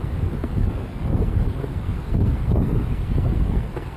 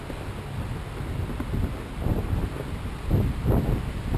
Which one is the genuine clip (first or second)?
second